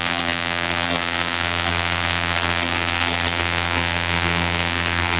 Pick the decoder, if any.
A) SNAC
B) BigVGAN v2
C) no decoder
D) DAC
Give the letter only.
B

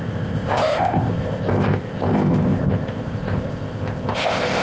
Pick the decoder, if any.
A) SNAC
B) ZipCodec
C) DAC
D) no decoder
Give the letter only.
B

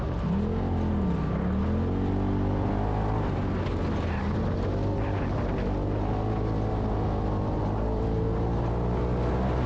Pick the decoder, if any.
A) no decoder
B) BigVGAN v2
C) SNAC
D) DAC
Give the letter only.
A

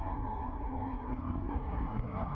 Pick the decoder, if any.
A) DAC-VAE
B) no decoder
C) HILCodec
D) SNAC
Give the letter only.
D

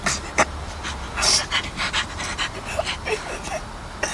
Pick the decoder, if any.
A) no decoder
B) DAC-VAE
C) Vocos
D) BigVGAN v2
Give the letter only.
A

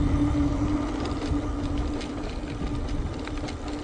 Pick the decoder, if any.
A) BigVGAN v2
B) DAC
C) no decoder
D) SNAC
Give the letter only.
C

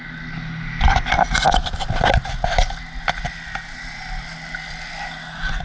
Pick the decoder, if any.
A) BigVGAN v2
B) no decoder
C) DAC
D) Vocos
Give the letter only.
B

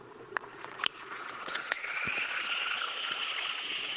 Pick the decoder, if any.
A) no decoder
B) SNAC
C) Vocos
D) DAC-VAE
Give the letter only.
C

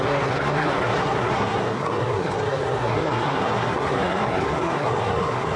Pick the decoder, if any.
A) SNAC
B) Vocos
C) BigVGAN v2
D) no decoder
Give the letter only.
A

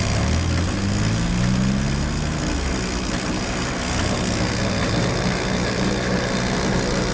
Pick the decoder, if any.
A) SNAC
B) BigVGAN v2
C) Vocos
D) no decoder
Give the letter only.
D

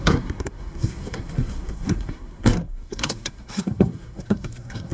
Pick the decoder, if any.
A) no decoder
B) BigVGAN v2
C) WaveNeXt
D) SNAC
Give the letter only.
D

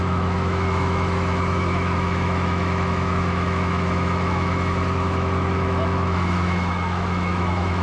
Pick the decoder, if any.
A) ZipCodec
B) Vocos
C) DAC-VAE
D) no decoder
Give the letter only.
C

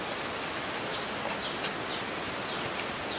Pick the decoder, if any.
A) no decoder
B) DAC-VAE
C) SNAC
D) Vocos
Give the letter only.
A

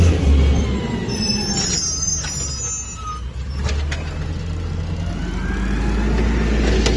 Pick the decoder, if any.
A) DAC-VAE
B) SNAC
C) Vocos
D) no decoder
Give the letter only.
D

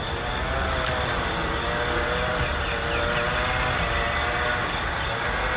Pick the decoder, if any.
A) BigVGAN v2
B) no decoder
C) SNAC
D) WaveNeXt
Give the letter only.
B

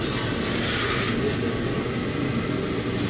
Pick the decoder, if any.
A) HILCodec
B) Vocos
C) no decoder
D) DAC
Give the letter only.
C